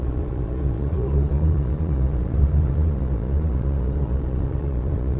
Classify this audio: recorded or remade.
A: remade